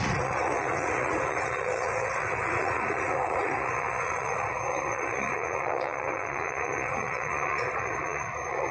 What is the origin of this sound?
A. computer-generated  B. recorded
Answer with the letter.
A